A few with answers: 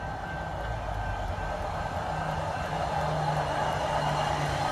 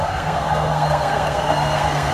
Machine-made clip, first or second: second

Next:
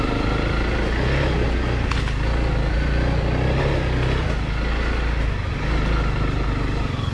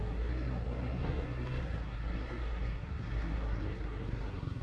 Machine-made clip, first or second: second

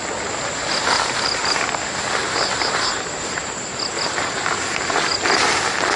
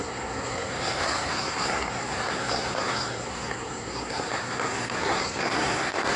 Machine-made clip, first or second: second